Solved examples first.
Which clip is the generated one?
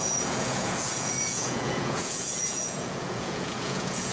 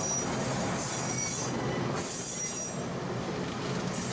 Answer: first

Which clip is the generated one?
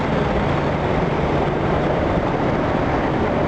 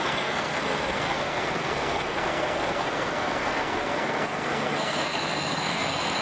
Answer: second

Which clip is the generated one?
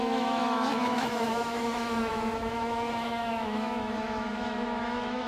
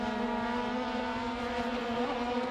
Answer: first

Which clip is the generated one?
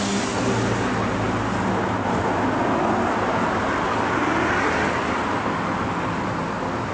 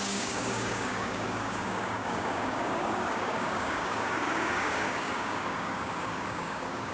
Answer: second